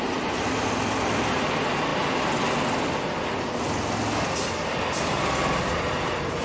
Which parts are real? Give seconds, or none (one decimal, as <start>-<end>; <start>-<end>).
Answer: 0.0-6.4